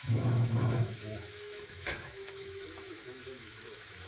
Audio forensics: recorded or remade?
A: remade